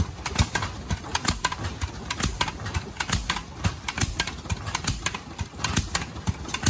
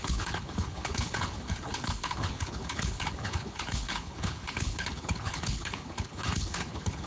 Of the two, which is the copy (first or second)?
second